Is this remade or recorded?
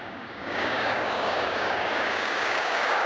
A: remade